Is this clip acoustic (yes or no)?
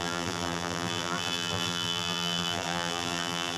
no